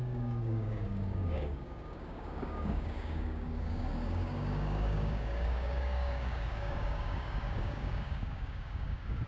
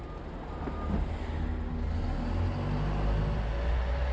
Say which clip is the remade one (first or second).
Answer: first